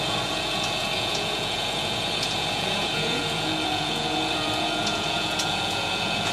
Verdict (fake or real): fake